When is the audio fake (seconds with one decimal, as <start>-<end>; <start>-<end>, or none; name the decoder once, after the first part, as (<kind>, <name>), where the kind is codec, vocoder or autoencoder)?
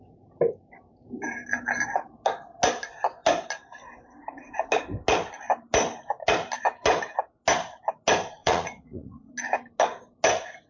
8.4-9.3 (vocoder, Vocos)